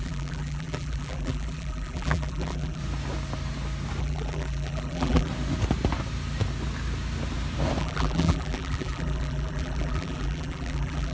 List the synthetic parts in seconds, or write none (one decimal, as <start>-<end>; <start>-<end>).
0.0-2.8; 4.0-5.3; 7.8-11.1